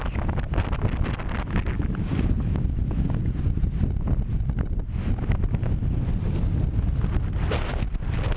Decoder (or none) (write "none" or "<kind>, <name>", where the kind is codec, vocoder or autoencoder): none